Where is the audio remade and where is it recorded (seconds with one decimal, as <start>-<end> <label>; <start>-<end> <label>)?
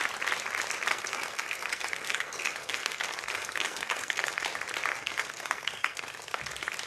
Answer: 0.0-0.9 recorded; 0.9-4.4 remade; 4.4-4.9 recorded; 4.9-6.4 remade; 6.4-6.9 recorded